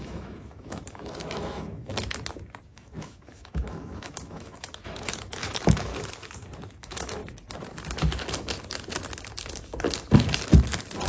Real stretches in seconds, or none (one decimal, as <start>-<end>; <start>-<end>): 1.9-2.7; 5.9-6.8; 7.2-11.1